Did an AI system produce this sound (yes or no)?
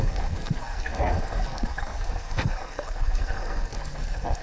yes